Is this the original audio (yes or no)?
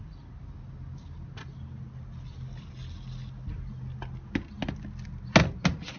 yes